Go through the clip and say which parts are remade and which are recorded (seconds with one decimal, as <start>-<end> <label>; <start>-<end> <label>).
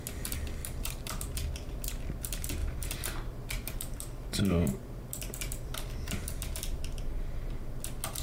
0.0-0.6 recorded; 0.6-1.7 remade; 1.7-2.6 recorded; 2.6-7.5 remade; 7.5-8.2 recorded